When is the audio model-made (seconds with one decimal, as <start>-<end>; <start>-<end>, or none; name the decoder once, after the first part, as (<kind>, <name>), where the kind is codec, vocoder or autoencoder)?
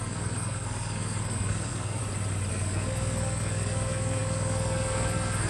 0.0-2.0 (codec, SNAC); 2.5-5.5